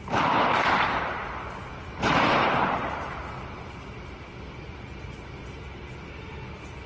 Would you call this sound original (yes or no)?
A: yes